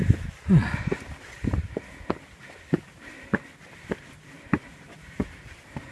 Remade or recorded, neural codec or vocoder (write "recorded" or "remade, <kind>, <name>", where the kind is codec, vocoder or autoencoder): recorded